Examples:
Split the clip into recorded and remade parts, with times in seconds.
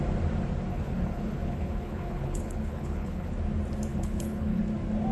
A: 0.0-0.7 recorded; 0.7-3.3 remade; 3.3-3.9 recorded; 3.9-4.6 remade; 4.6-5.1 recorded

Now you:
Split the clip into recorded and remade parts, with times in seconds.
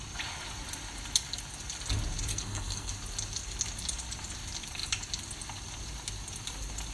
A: 0.0-2.3 recorded; 2.3-2.9 remade; 2.9-6.9 recorded